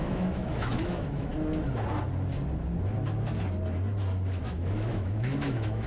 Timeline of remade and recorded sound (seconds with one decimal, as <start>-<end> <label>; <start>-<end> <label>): 0.0-1.3 remade; 1.3-4.4 recorded; 4.4-5.9 remade